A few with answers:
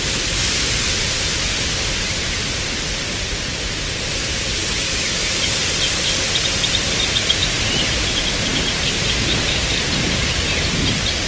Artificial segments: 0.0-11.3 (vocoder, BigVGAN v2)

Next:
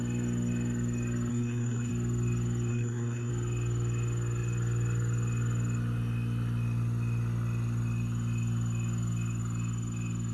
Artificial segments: 1.3-1.9 (codec, SNAC); 2.7-3.3

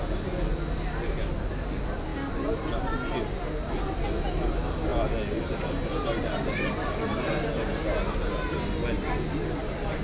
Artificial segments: none

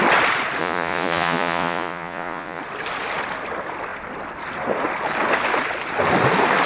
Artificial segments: 0.6-2.6 (vocoder, Vocos)

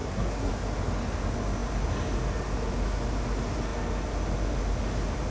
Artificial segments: 0.0-0.5 (codec, SNAC)